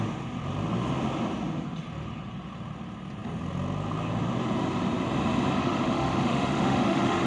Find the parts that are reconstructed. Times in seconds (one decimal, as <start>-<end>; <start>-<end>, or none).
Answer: 5.6-7.3